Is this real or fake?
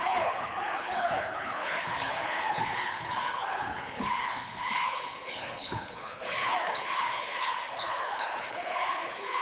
fake